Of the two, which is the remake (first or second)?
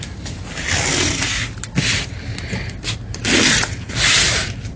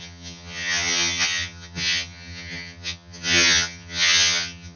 second